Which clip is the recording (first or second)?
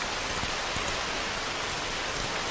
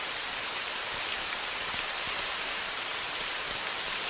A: first